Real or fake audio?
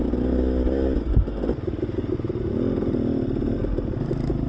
real